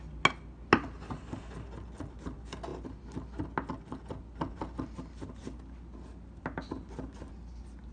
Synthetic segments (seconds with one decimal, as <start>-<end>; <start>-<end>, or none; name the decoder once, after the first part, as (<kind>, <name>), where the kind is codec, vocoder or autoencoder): none